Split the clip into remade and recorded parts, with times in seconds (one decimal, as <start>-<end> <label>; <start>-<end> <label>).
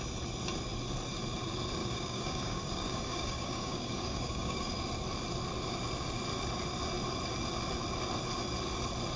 0.0-1.8 recorded; 1.8-4.7 remade; 4.7-9.2 recorded